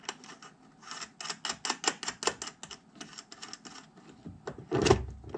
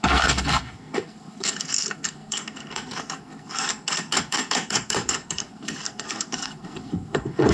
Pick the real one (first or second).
first